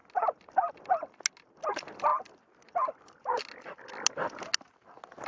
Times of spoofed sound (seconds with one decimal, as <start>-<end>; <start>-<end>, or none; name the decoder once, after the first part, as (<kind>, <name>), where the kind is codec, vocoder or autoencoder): none